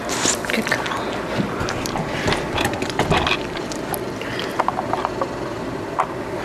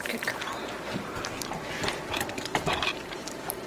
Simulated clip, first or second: second